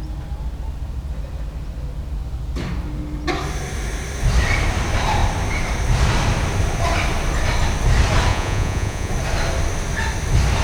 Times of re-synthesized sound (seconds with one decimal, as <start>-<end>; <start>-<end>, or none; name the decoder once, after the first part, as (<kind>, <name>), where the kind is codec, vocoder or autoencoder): 8.3-9.1 (vocoder, Vocos)